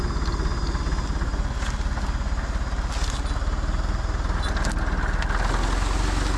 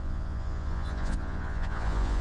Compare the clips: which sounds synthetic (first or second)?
second